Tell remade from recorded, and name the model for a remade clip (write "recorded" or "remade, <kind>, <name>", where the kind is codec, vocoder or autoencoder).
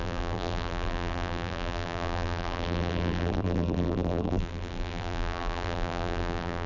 remade, vocoder, BigVGAN v2